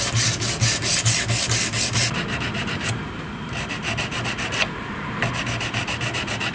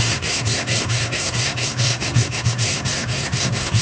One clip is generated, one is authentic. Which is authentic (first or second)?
first